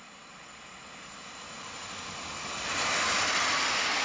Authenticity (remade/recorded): recorded